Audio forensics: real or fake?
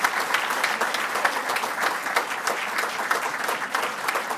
real